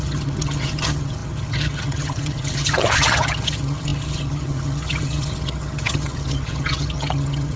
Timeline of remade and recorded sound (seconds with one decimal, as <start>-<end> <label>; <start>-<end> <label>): 0.0-7.6 remade